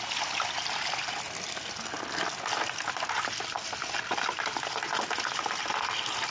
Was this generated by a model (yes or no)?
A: no